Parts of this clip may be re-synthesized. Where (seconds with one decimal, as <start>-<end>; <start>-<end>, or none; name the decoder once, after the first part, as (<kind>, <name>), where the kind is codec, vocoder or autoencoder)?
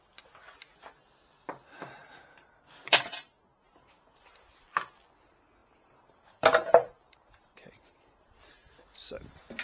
2.0-4.2 (vocoder, BigVGAN v2); 5.6-8.4